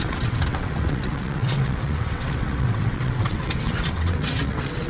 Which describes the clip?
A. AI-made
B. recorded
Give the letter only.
A